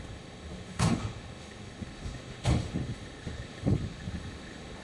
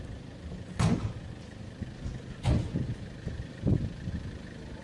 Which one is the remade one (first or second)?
first